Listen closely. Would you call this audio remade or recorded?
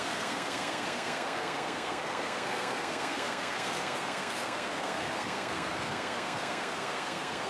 remade